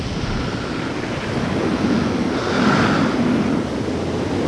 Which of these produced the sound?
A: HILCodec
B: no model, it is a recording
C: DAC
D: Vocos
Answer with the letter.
B